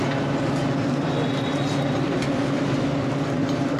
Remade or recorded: recorded